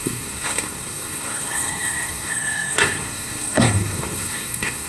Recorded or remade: remade